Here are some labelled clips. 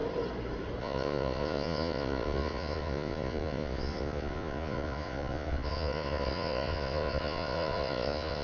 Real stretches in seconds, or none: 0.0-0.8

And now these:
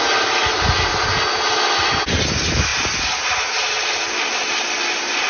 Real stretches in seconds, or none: 0.0-5.3

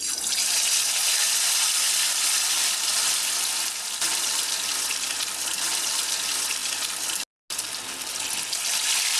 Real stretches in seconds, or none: 0.0-9.2

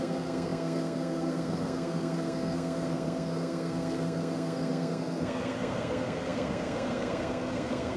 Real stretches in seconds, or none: none

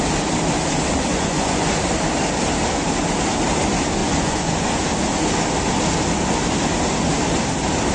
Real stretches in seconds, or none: 0.0-1.1; 1.7-4.0; 4.9-7.9